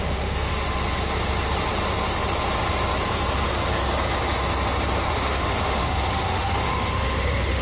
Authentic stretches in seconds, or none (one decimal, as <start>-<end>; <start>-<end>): 0.5-5.1